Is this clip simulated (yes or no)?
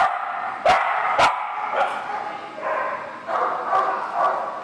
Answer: no